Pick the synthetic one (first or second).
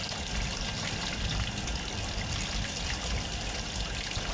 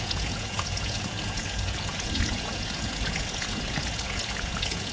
second